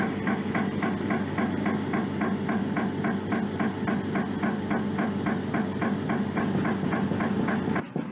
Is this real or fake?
real